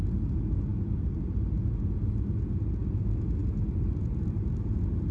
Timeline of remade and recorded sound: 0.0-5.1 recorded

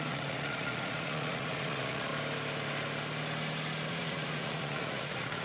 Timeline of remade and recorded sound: 0.0-2.1 remade; 2.1-3.9 recorded; 3.9-5.4 remade

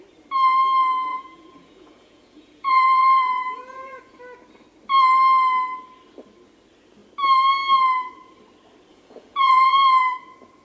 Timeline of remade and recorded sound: 0.0-1.1 recorded; 1.1-4.2 remade; 4.2-8.9 recorded; 8.9-10.0 remade; 10.0-10.6 recorded

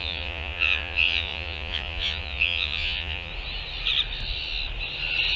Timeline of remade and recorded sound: 0.0-3.3 remade; 3.3-5.4 recorded

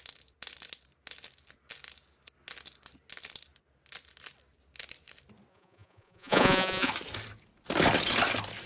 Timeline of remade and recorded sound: 0.0-5.5 recorded; 5.5-6.9 remade; 6.9-8.7 recorded

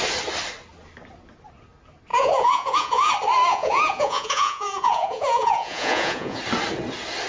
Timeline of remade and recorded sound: 0.0-2.1 recorded; 2.1-3.1 remade; 3.1-3.5 recorded; 3.5-6.4 remade; 6.4-7.3 recorded

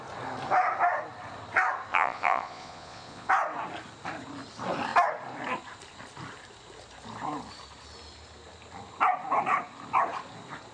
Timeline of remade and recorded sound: 0.0-1.9 recorded; 1.9-3.3 remade; 3.3-10.7 recorded

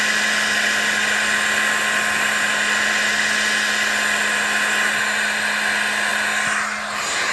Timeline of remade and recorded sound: 0.0-7.3 recorded